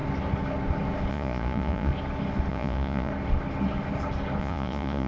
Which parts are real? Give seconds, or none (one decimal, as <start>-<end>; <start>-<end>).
0.0-1.1; 1.9-2.5; 3.1-4.4